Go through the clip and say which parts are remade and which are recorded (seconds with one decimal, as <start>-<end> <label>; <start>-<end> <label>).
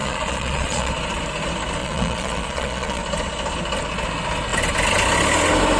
0.0-0.9 remade; 0.9-1.8 recorded; 1.8-3.0 remade; 3.0-5.8 recorded